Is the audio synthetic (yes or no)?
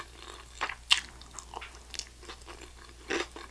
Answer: no